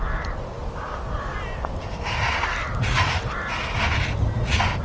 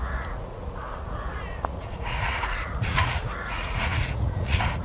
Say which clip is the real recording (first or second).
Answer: first